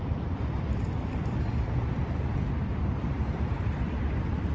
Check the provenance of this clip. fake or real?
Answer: fake